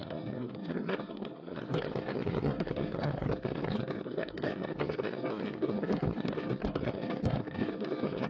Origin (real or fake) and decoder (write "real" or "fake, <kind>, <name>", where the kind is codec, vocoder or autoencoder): fake, codec, SNAC